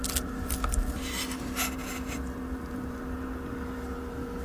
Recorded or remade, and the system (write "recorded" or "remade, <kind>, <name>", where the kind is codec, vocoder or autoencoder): recorded